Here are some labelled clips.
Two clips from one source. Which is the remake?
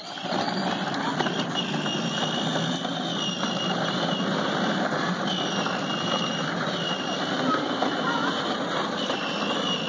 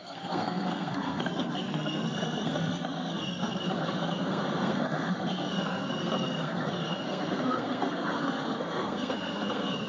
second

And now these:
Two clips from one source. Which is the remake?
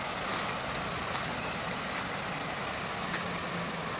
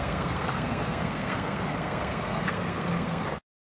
second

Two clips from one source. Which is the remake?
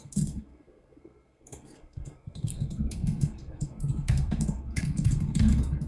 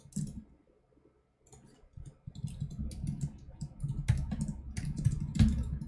first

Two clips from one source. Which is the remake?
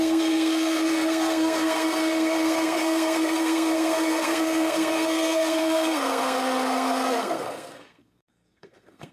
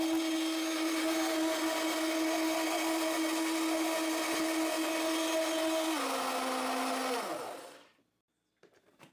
first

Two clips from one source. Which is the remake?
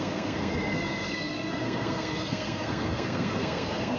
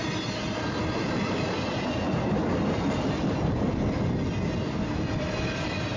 first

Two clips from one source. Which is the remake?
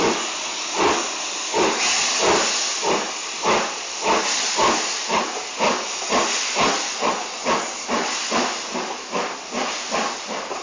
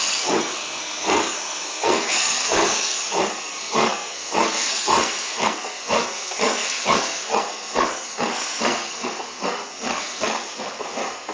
second